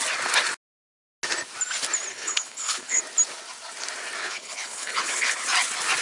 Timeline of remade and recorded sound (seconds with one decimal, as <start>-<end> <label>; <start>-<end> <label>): 0.0-2.1 recorded; 2.1-3.0 remade; 3.0-4.2 recorded; 4.2-5.3 remade; 5.3-6.0 recorded